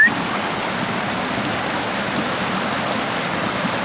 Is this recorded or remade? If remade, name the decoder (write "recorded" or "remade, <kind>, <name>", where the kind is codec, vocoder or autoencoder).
recorded